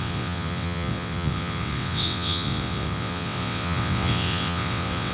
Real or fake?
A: fake